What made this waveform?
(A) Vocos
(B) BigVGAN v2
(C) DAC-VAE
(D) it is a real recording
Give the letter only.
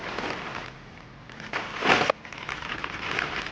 B